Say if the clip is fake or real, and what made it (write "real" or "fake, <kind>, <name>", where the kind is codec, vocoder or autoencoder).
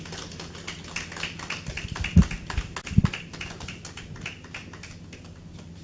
real